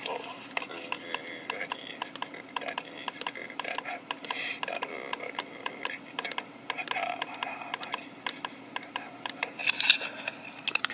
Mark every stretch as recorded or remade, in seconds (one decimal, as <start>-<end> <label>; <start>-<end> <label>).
0.0-10.9 recorded